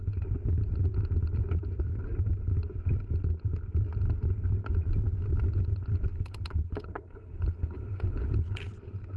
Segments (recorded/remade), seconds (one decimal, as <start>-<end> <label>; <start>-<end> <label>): 0.0-6.1 recorded; 6.1-8.7 remade; 8.7-9.2 recorded